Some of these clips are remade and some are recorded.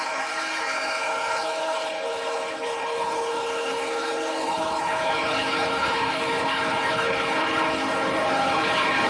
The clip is remade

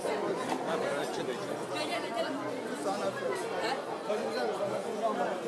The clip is recorded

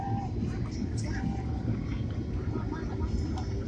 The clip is recorded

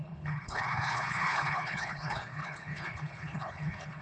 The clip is remade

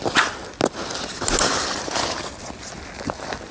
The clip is recorded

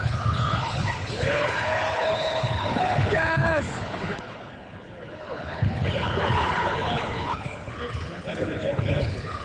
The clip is remade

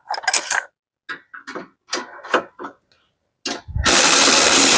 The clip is recorded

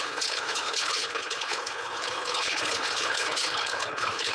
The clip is remade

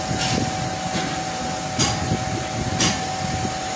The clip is recorded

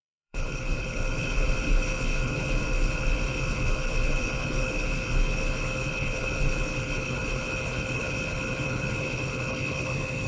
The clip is remade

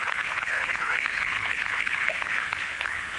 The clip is remade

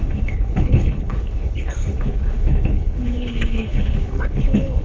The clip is remade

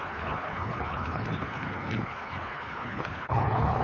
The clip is remade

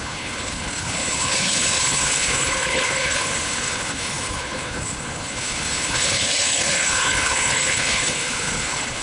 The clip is remade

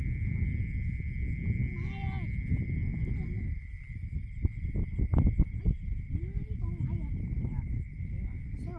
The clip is recorded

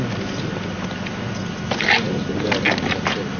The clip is recorded